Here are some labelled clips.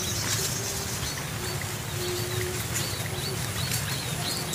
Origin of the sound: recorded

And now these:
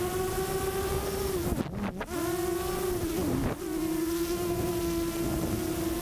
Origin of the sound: recorded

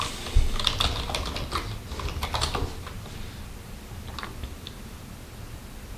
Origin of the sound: recorded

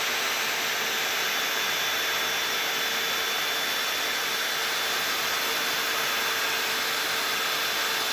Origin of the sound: recorded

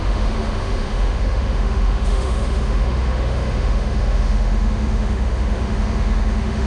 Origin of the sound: remade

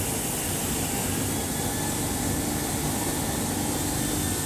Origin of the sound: recorded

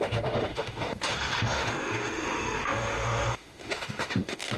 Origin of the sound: remade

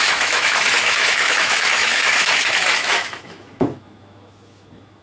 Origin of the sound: remade